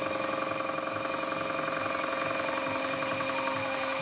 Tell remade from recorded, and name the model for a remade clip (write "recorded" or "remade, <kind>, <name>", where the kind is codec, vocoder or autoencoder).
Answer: recorded